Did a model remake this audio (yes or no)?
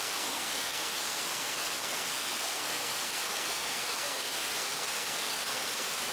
yes